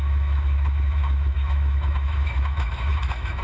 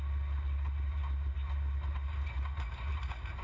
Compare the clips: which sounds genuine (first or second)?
second